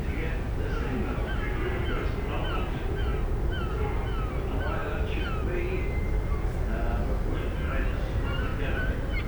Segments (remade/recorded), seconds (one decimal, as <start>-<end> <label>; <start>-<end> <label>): 0.0-9.3 recorded

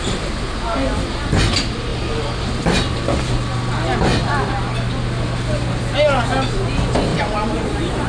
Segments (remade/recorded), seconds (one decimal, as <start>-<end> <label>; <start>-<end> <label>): 0.0-1.9 recorded; 1.9-3.3 remade; 3.3-7.1 recorded; 7.1-8.1 remade

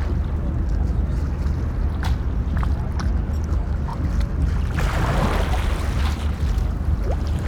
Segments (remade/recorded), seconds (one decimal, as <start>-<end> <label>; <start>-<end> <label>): 0.0-7.5 recorded

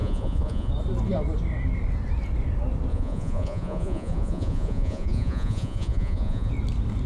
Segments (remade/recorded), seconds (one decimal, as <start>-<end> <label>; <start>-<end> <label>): 0.0-0.7 remade; 0.7-2.9 recorded; 2.9-6.5 remade; 6.5-7.1 recorded

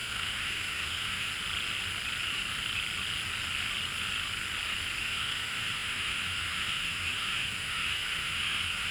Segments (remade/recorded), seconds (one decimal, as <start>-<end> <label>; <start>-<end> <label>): 0.0-1.3 remade; 1.3-5.0 recorded; 5.0-8.9 remade

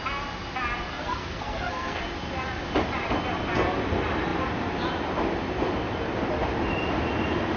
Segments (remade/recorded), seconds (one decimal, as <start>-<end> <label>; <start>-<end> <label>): 0.0-0.9 recorded; 0.9-2.0 remade; 2.0-7.6 recorded

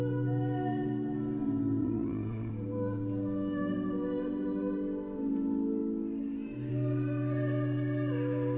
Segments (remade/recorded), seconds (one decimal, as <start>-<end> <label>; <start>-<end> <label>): 0.0-1.8 recorded; 1.8-2.5 remade; 2.5-8.6 recorded

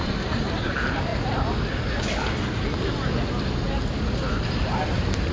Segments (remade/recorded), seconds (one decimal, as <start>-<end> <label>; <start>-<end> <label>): 0.0-1.1 remade; 1.1-4.3 recorded; 4.3-5.3 remade